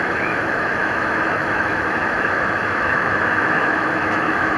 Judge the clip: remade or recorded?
remade